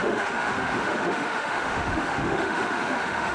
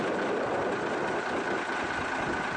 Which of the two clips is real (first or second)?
second